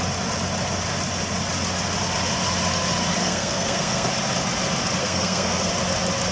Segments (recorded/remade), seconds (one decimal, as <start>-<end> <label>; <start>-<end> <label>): 0.0-3.2 recorded; 3.2-4.1 remade; 4.1-5.0 recorded; 5.0-5.7 remade; 5.7-6.3 recorded